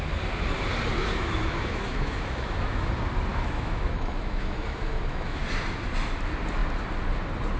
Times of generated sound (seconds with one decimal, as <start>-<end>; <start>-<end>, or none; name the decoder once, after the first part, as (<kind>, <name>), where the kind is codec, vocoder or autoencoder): 0.9-2.9 (autoencoder, DAC-VAE); 3.3-5.4